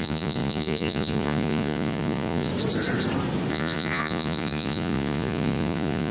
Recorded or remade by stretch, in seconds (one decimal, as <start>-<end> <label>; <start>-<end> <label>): 0.0-2.5 remade; 2.5-3.5 recorded; 3.5-6.1 remade